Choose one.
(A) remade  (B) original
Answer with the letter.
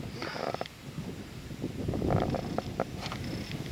B